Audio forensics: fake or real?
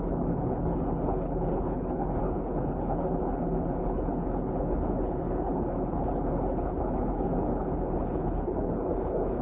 fake